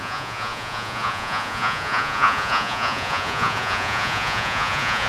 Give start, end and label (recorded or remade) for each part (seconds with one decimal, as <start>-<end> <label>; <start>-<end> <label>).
0.0-5.1 remade